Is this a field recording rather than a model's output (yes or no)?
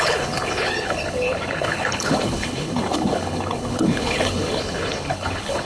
no